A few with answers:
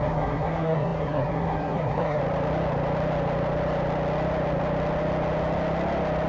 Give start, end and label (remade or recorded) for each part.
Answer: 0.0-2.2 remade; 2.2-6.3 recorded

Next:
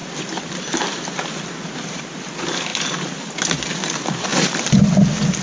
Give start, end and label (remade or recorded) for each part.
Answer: 0.0-2.2 remade; 2.2-2.7 recorded; 2.7-3.3 remade; 3.3-4.3 recorded; 4.3-5.4 remade

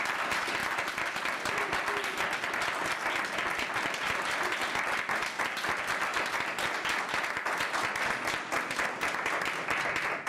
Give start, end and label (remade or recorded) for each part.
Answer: 0.0-10.3 recorded

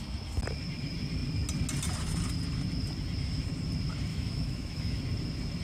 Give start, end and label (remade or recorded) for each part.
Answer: 0.0-4.1 recorded; 4.1-5.0 remade; 5.0-5.6 recorded

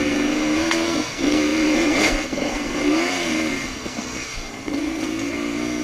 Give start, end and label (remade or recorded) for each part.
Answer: 0.0-5.8 remade

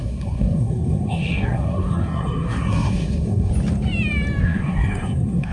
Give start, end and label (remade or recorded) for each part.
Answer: 0.0-3.5 remade; 3.5-4.4 recorded; 4.4-5.5 remade

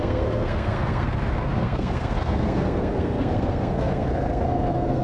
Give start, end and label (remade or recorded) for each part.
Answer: 0.0-5.0 remade

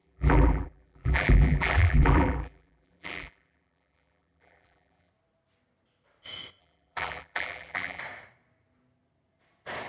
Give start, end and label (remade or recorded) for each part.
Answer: 0.0-5.1 remade; 5.1-6.6 recorded; 6.6-8.0 remade; 8.0-9.9 recorded